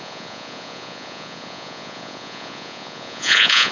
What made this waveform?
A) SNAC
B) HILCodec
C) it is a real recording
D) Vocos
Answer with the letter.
D